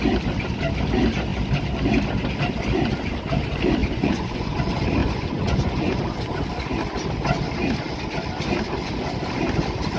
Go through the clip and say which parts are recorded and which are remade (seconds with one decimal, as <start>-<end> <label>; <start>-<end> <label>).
0.0-3.8 recorded; 3.8-4.6 remade; 4.6-5.0 recorded; 5.0-6.0 remade; 6.0-10.0 recorded

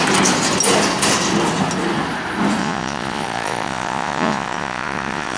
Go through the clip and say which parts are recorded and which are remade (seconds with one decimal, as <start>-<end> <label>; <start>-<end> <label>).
0.0-2.6 recorded; 2.6-5.4 remade

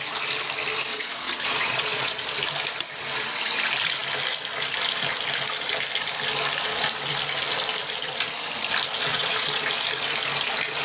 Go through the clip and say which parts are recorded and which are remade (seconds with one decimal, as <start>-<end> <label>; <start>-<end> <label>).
0.0-0.9 recorded; 0.9-2.2 remade; 2.2-9.1 recorded; 9.1-9.6 remade; 9.6-10.8 recorded

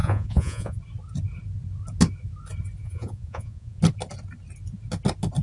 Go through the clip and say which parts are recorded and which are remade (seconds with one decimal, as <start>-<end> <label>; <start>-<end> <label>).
0.0-0.8 remade; 0.8-2.8 recorded; 2.8-3.8 remade; 3.8-5.4 recorded

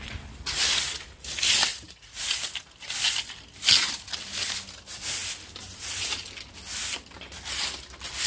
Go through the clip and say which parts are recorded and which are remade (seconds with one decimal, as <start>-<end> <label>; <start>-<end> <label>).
0.0-1.7 recorded; 1.7-2.2 remade; 2.2-8.3 recorded

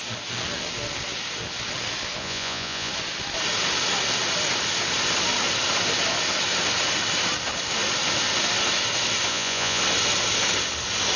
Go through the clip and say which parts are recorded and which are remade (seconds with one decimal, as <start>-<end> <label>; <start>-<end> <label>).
0.0-2.2 recorded; 2.2-2.9 remade; 2.9-9.3 recorded; 9.3-9.8 remade; 9.8-11.2 recorded

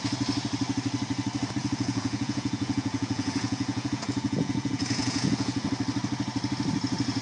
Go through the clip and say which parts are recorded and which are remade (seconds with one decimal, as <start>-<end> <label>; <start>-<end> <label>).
0.0-1.6 recorded; 1.6-5.7 remade; 5.7-7.2 recorded

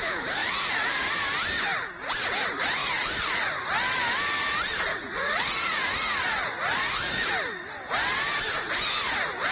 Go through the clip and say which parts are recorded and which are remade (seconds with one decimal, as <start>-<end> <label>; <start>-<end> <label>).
0.0-0.4 recorded; 0.4-1.1 remade; 1.1-2.8 recorded; 2.8-3.5 remade; 3.5-4.9 recorded; 4.9-7.1 remade; 7.1-9.5 recorded